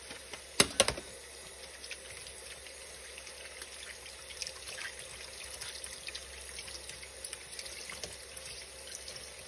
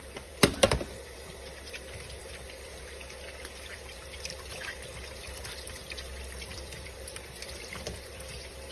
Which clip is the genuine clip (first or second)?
first